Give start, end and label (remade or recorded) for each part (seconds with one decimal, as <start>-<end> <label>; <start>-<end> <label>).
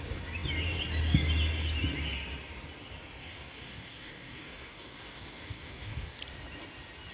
0.0-3.2 recorded; 3.2-6.2 remade; 6.2-7.1 recorded